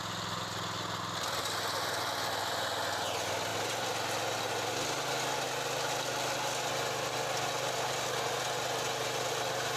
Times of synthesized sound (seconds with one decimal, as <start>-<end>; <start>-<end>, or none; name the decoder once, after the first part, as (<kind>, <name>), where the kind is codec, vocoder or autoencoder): none